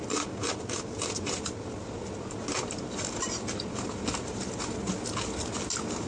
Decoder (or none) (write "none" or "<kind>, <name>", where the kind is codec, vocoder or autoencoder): none